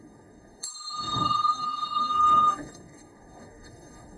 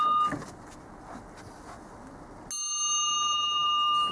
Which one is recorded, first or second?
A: second